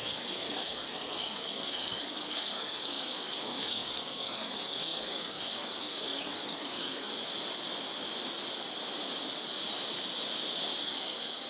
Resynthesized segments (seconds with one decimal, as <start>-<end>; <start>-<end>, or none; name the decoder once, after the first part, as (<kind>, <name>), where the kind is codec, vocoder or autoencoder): 0.0-7.1 (codec, SNAC); 10.8-11.5